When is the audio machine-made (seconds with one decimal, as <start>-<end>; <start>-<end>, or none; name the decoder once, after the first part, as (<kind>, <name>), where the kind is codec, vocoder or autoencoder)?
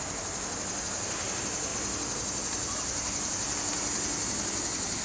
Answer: none